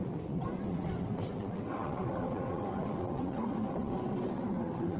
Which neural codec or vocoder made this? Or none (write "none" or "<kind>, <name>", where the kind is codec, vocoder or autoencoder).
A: vocoder, WaveNeXt